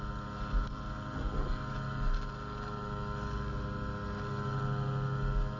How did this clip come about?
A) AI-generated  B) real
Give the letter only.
B